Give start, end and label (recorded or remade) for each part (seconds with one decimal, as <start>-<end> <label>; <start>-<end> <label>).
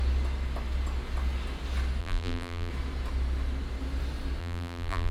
0.0-2.0 recorded; 2.0-2.7 remade; 2.7-4.4 recorded; 4.4-5.1 remade